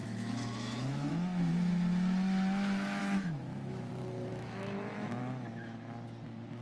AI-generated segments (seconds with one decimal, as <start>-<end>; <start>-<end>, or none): 0.0-1.1; 3.0-3.9; 4.3-5.2